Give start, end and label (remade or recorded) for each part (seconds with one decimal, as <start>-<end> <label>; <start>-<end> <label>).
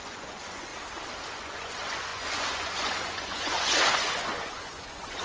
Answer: 0.0-0.7 remade; 0.7-1.3 recorded; 1.3-5.2 remade